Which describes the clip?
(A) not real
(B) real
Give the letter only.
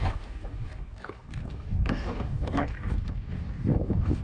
A